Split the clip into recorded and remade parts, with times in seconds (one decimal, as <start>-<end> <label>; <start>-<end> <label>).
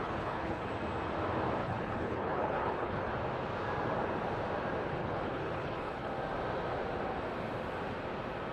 0.0-0.7 remade; 0.7-1.6 recorded; 1.6-3.1 remade; 3.1-5.0 recorded; 5.0-6.1 remade; 6.1-8.5 recorded